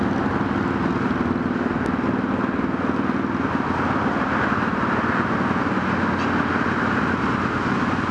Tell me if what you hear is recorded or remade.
recorded